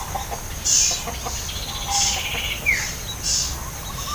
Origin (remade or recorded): recorded